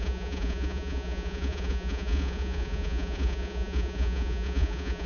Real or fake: fake